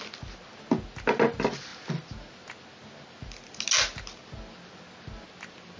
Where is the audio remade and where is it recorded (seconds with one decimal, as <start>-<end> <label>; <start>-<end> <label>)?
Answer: 0.0-5.8 recorded